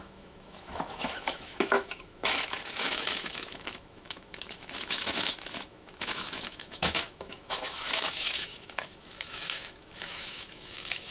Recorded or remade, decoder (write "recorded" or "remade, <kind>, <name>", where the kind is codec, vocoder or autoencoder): remade, autoencoder, DAC-VAE